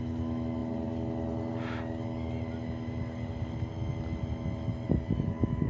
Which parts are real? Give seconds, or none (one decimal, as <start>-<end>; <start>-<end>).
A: 0.0-5.7